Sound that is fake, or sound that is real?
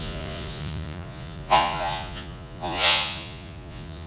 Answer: fake